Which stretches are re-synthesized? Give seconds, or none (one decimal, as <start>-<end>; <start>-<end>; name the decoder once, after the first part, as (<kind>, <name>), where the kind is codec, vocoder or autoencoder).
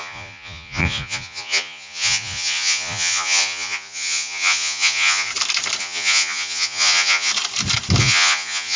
0.0-5.3 (vocoder, Vocos); 5.8-7.3; 8.0-8.8